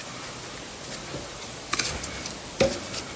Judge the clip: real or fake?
real